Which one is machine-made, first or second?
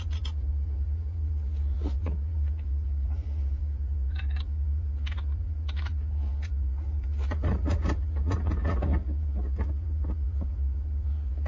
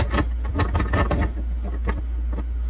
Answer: first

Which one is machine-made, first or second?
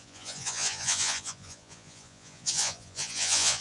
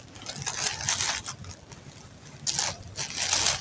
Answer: first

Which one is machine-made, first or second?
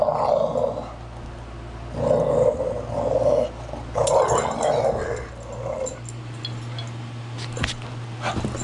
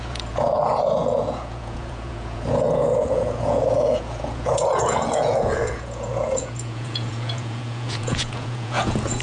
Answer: second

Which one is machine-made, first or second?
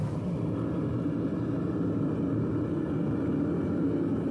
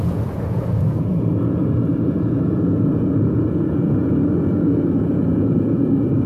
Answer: second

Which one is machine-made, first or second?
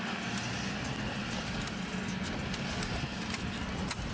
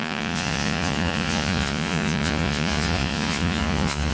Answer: second